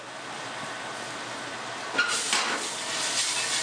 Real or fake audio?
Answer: real